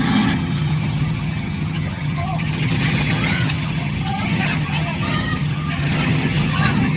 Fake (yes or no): yes